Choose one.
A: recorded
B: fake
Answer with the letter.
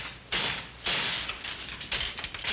A